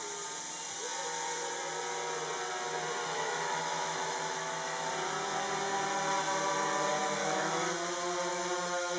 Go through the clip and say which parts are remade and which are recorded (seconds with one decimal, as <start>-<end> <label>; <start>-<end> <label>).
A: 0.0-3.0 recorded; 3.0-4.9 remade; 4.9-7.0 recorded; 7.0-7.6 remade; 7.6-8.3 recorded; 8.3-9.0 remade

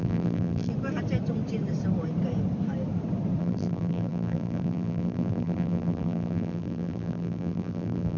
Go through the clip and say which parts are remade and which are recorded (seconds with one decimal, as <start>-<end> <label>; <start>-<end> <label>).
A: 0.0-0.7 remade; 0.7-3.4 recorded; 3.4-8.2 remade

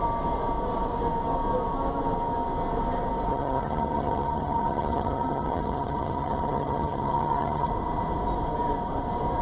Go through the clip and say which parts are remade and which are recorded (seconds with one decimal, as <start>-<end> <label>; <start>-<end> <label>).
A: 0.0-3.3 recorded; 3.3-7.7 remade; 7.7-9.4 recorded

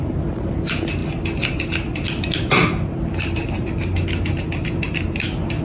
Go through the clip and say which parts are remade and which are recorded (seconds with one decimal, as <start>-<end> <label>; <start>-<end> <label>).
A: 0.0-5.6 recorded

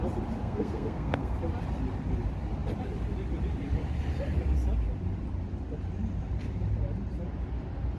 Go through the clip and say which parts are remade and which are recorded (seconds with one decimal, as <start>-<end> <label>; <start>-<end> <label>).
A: 0.0-0.4 recorded; 0.4-1.4 remade; 1.4-8.0 recorded

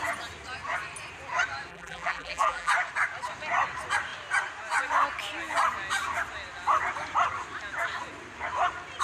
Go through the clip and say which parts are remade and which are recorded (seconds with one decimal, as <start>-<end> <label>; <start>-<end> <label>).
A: 0.0-1.7 recorded; 1.7-2.7 remade; 2.7-9.0 recorded

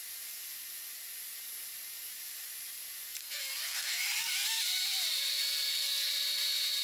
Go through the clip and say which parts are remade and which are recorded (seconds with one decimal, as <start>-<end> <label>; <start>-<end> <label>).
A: 0.0-3.2 recorded; 3.2-4.0 remade; 4.0-5.3 recorded; 5.3-6.1 remade; 6.1-6.8 recorded